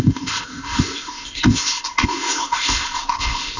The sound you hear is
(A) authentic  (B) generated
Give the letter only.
B